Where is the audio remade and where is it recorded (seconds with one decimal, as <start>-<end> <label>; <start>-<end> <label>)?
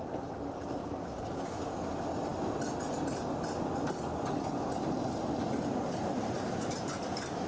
0.0-0.8 recorded; 0.8-1.7 remade; 1.7-7.5 recorded